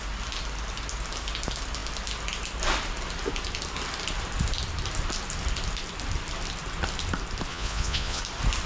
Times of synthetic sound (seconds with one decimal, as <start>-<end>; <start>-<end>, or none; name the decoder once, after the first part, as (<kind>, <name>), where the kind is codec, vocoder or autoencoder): 7.5-8.2 (vocoder, Vocos)